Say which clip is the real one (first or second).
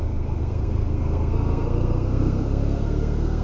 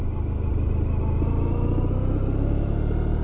second